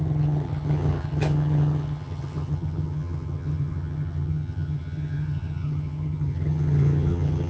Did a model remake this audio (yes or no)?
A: yes